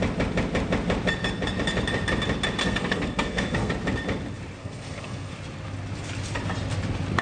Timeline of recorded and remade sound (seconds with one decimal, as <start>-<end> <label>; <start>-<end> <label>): 0.0-2.6 recorded; 2.6-3.7 remade; 3.7-4.6 recorded; 4.6-5.3 remade; 5.3-7.2 recorded